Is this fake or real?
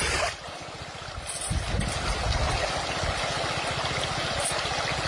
real